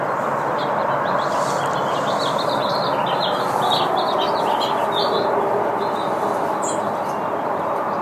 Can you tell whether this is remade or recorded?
recorded